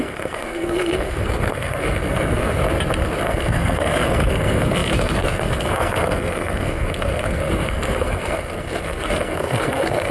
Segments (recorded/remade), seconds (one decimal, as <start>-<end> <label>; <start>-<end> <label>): 0.0-2.6 remade; 2.6-3.2 recorded; 3.2-10.1 remade